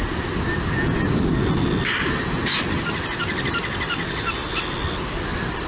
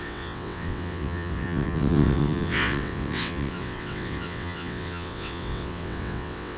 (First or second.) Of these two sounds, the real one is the first